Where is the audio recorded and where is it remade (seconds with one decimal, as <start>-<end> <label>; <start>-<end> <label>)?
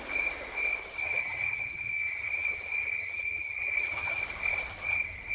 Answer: 0.0-1.0 recorded; 1.0-4.2 remade; 4.2-5.3 recorded